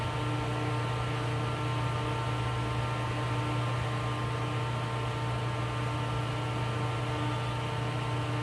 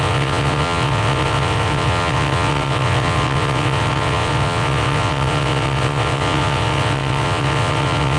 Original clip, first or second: first